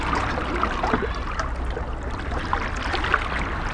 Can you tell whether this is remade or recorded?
recorded